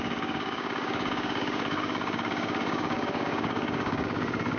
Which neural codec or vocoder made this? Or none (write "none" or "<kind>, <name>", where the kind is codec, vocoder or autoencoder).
codec, DAC